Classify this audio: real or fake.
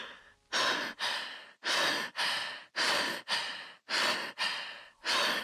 real